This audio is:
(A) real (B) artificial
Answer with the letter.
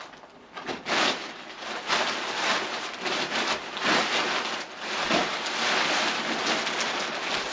A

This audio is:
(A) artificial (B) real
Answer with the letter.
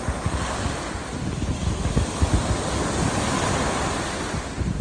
B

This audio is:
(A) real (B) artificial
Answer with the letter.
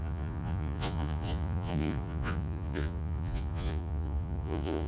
B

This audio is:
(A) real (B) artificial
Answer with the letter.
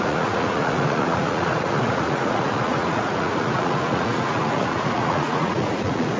B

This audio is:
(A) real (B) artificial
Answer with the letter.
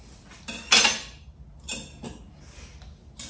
A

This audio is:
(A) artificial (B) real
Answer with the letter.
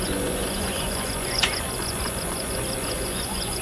A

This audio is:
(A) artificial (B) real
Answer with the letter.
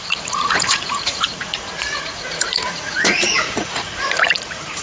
A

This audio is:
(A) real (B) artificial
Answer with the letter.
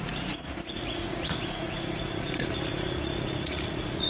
B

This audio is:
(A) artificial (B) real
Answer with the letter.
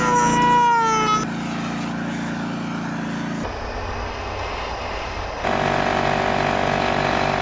B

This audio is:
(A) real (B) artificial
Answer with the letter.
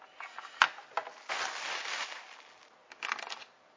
A